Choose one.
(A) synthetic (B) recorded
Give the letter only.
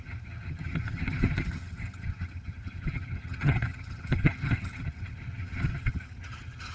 A